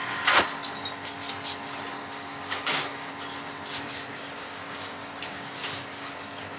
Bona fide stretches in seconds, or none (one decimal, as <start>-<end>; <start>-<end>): 0.0-2.0; 3.1-4.1; 6.1-6.6